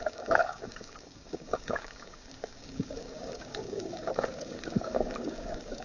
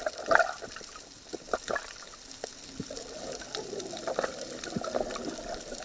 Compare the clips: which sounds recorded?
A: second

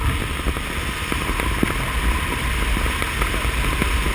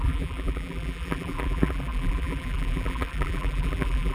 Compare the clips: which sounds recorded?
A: first